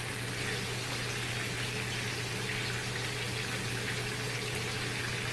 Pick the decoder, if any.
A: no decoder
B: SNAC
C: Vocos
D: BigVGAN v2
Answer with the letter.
A